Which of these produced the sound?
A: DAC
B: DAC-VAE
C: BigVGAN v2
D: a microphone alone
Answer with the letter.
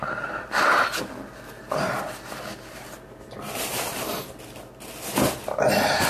D